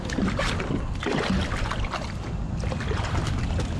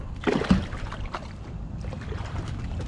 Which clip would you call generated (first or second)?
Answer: second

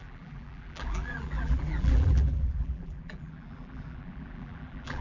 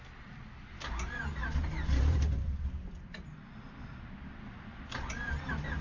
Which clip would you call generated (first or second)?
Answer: first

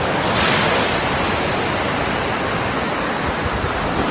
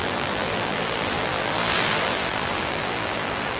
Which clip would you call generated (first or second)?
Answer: second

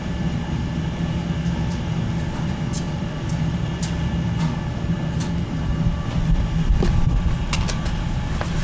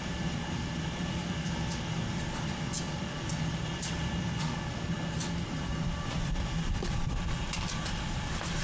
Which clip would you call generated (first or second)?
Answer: second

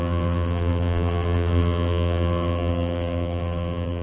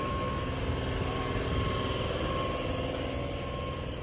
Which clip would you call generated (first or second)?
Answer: first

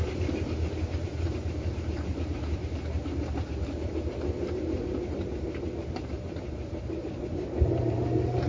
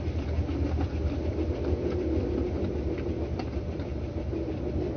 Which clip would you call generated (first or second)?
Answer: first